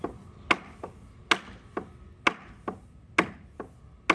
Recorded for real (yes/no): yes